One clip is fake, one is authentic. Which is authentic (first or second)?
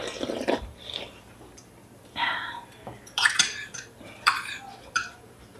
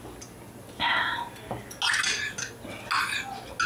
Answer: second